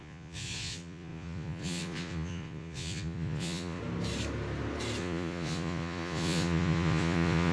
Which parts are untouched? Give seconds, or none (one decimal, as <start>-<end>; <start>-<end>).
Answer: 3.8-5.0